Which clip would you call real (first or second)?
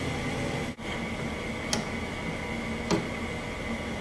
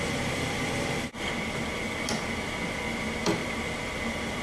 first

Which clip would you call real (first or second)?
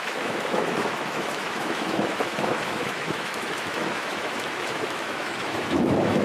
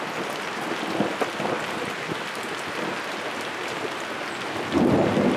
second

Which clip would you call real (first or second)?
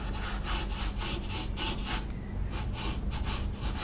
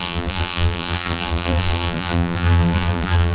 first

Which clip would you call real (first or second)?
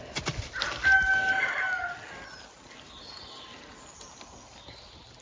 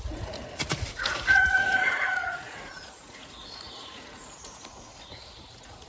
first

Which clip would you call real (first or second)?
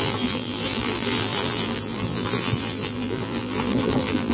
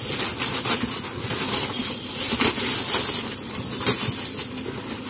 second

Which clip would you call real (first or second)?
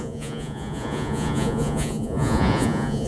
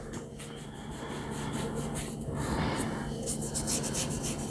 second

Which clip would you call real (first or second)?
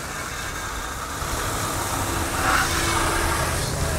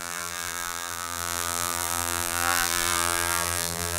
first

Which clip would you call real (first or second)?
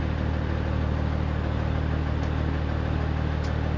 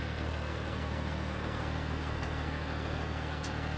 first